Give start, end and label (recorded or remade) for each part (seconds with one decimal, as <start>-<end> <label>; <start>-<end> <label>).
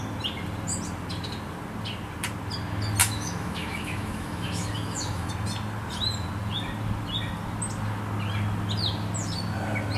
0.0-3.0 recorded; 3.0-5.3 remade; 5.3-10.0 recorded